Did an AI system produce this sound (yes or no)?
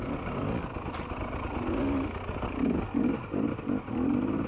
no